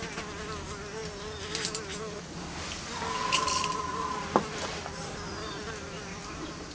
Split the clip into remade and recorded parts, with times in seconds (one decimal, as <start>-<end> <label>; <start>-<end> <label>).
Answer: 0.0-3.2 recorded; 3.2-5.4 remade; 5.4-6.7 recorded